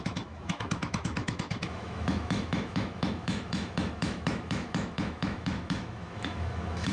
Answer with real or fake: fake